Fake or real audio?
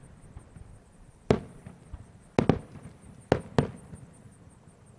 real